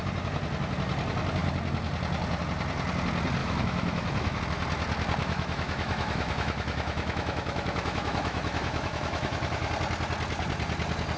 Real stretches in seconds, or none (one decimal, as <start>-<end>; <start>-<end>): 0.0-3.4; 4.4-5.2; 9.7-11.2